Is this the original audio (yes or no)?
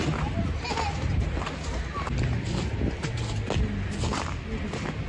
yes